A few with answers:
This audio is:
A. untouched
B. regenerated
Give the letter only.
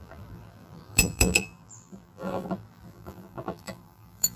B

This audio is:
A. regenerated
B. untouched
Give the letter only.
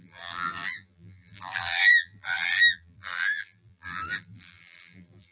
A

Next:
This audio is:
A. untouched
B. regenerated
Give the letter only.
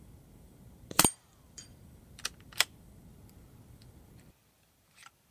B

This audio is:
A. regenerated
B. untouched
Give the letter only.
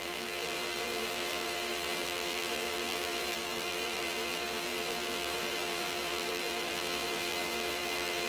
A